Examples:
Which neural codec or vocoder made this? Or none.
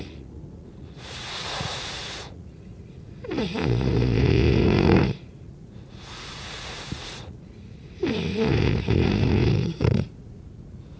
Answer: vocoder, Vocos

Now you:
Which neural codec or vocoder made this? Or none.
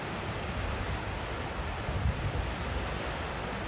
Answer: none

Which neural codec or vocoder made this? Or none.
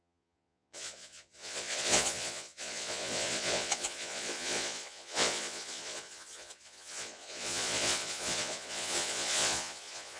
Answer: vocoder, Vocos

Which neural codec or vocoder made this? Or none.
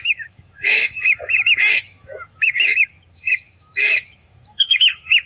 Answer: autoencoder, DAC-VAE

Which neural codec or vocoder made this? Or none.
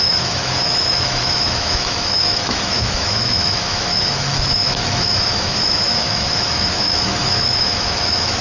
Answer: autoencoder, DAC-VAE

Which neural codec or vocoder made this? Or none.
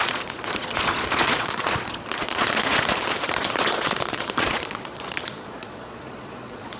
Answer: vocoder, Vocos